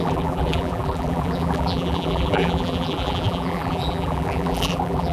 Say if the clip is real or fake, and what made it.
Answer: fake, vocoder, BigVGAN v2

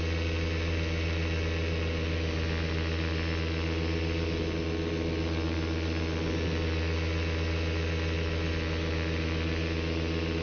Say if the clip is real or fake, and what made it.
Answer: real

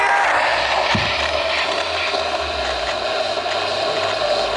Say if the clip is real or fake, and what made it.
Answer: real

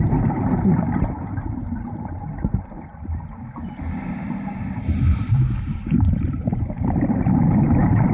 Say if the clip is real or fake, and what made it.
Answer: fake, vocoder, BigVGAN v2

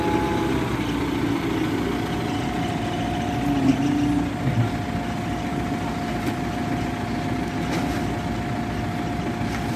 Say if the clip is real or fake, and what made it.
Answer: real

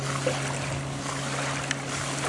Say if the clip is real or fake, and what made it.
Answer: real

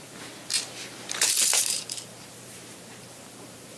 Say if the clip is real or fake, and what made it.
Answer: fake, vocoder, BigVGAN v2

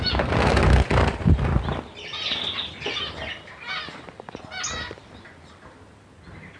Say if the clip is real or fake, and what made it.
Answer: real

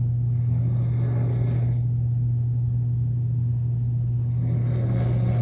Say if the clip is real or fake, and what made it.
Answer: real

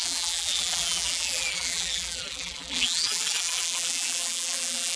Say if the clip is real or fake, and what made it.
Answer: fake, vocoder, BigVGAN v2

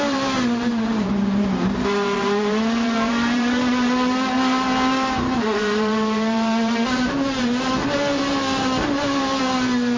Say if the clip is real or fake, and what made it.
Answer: fake, vocoder, BigVGAN v2